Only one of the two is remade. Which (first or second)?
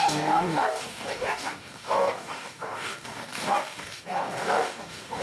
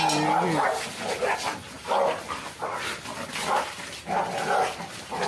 first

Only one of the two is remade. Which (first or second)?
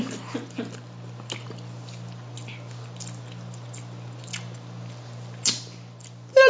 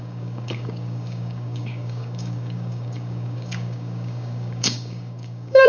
second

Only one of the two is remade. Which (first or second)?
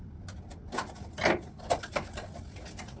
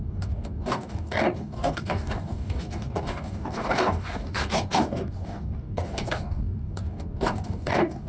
second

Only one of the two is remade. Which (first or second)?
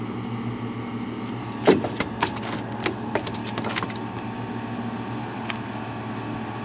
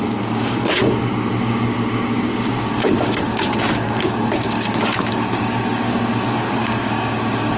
second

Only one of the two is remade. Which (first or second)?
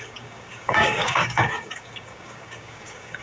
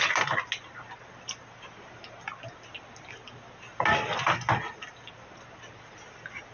first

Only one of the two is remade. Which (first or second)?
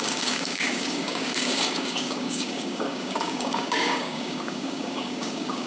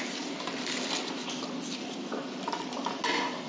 first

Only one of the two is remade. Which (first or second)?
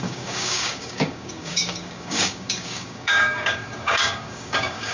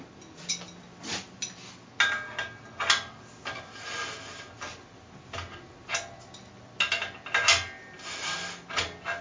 first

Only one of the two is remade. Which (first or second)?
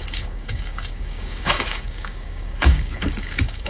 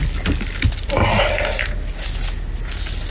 first